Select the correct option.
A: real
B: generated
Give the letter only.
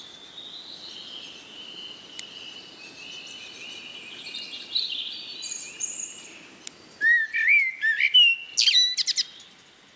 A